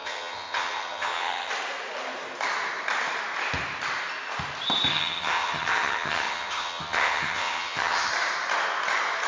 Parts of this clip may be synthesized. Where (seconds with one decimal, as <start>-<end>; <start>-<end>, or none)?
0.0-1.5; 4.9-8.1